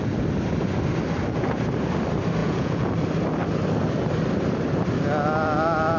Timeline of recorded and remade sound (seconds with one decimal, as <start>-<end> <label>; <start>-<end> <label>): 0.0-2.4 recorded; 2.4-2.9 remade; 2.9-6.0 recorded